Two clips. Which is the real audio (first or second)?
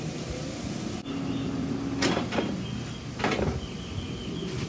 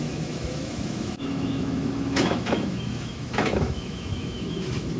first